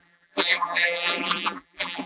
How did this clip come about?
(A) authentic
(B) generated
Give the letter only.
B